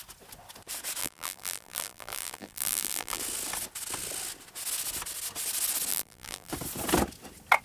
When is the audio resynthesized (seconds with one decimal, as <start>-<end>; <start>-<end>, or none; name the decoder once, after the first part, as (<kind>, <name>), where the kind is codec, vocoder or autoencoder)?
1.0-3.2 (vocoder, BigVGAN v2); 5.9-6.5